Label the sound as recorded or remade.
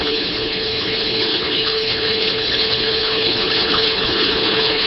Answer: remade